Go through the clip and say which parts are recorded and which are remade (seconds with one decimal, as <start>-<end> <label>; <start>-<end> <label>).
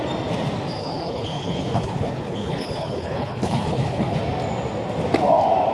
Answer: 0.0-0.8 recorded; 0.8-4.2 remade; 4.2-5.7 recorded